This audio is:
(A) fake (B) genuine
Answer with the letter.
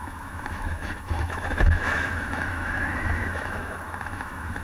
A